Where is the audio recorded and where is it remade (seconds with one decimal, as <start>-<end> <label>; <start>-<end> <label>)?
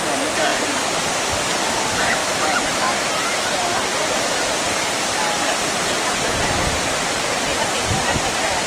0.0-2.2 recorded; 2.2-2.8 remade; 2.8-8.7 recorded